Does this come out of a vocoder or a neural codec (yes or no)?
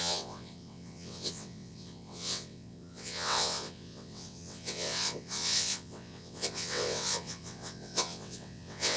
yes